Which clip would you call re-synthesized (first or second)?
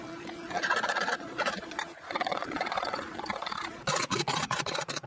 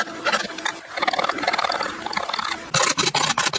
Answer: first